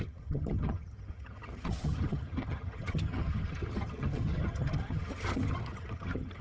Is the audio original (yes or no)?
no